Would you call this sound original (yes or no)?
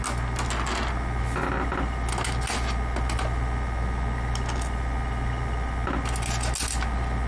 yes